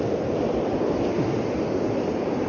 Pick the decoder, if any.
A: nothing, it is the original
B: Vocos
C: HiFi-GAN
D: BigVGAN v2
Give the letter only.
D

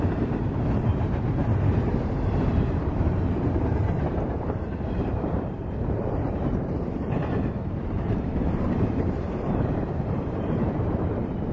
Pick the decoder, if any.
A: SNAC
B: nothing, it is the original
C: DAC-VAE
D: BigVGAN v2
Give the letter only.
D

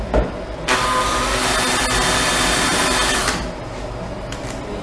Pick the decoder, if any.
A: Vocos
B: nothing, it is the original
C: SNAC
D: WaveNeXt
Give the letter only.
B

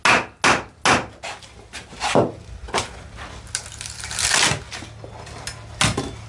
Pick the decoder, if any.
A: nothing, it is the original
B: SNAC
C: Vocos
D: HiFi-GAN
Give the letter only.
A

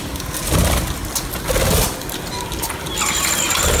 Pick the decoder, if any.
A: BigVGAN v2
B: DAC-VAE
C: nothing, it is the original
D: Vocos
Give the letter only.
C